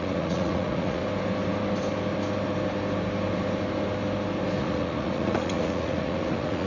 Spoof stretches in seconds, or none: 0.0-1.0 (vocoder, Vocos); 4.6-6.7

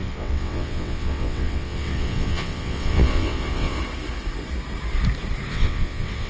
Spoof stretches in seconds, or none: 0.0-3.8 (vocoder, WaveNeXt); 5.5-6.3

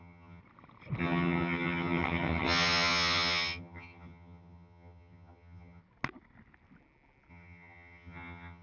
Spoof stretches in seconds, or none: 0.0-0.4 (vocoder, HiFi-GAN); 1.0-5.8; 7.3-8.6

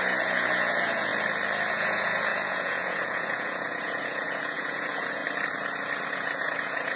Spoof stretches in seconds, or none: 0.0-1.1 (vocoder, Vocos); 1.7-5.2; 6.1-7.0